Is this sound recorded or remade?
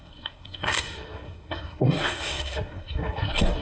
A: remade